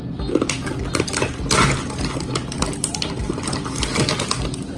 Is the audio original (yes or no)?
yes